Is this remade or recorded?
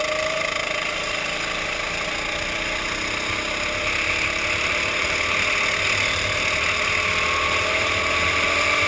recorded